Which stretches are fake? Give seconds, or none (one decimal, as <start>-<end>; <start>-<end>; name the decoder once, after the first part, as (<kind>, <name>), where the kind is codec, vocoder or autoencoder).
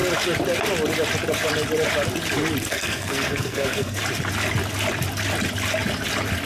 2.6-4.0 (codec, SNAC)